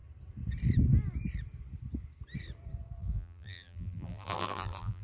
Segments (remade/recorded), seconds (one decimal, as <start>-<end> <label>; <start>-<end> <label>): 0.0-3.0 recorded; 3.0-5.0 remade